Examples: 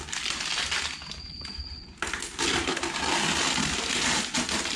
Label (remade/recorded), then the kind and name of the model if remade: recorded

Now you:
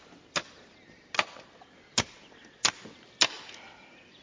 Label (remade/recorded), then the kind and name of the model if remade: recorded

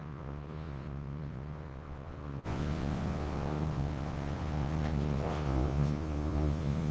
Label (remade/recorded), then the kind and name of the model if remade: remade, vocoder, Vocos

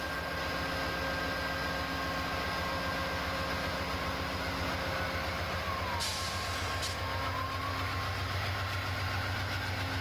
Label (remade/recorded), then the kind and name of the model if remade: recorded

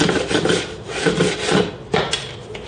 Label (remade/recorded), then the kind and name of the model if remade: recorded